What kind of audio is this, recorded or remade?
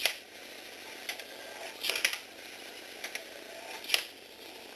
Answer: recorded